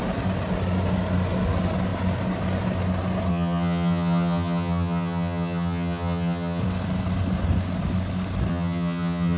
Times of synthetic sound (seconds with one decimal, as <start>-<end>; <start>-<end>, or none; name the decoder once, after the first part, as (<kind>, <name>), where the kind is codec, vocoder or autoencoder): 3.3-6.6 (vocoder, HiFi-GAN); 8.5-9.4